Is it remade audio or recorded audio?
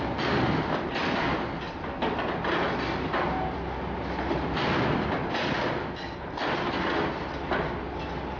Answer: recorded